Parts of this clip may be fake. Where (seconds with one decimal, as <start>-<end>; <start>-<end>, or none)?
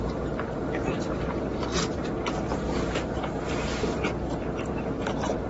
0.0-1.7; 3.8-5.5